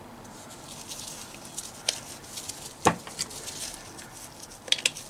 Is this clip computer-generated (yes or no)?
no